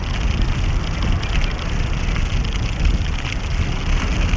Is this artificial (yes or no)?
no